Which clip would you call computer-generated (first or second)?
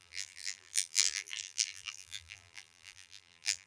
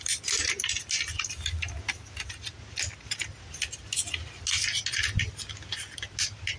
first